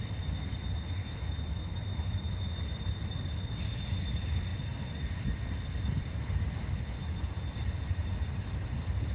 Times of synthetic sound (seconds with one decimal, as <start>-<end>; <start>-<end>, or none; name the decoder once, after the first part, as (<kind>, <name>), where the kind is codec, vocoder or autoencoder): 1.0-2.3 (autoencoder, DAC-VAE)